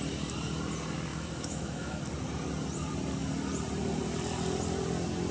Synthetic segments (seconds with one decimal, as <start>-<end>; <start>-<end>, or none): 1.1-2.0